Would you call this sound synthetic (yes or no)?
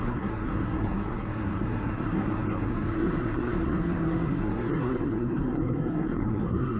yes